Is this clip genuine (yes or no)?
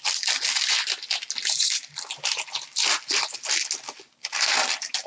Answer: yes